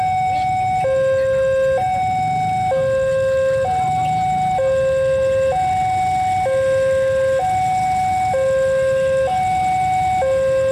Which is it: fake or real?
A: real